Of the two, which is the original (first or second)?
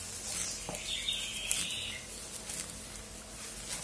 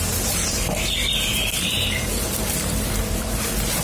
first